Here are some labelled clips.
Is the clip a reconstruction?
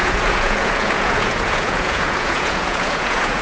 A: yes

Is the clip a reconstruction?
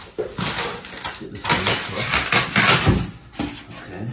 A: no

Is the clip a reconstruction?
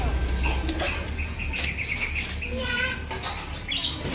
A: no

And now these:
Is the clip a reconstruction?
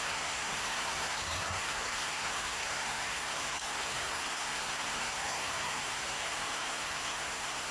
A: yes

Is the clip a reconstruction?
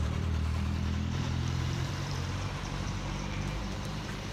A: yes